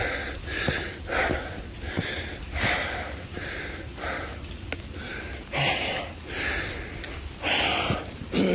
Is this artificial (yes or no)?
no